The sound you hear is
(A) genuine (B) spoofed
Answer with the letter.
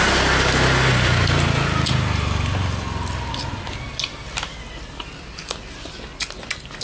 A